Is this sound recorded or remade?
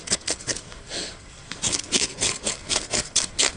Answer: remade